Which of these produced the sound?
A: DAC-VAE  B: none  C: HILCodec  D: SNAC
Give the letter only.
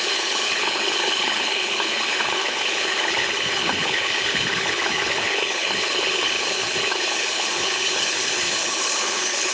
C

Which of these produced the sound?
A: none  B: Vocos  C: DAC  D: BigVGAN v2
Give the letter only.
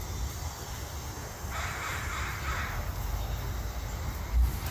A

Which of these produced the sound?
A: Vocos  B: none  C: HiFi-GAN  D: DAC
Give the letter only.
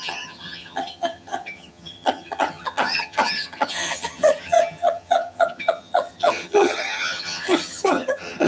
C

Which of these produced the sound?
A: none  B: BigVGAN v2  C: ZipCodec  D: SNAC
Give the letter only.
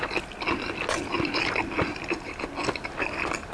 A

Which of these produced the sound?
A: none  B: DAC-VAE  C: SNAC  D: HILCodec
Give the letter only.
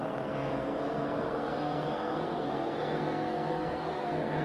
C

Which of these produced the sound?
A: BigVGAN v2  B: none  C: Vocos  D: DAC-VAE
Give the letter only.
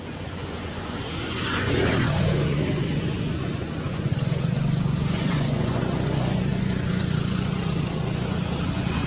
C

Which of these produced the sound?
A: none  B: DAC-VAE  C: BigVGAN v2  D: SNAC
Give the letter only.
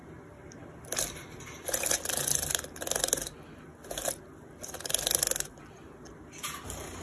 A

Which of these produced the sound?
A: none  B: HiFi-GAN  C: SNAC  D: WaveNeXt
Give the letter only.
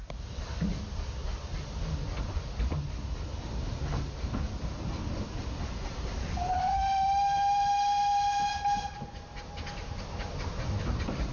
A